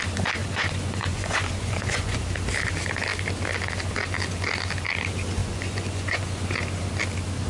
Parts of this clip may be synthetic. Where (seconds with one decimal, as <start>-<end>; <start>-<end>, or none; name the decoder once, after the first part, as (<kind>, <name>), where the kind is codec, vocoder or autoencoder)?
0.4-2.2 (vocoder, Vocos); 5.4-6.5